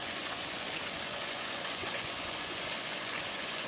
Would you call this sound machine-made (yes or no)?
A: yes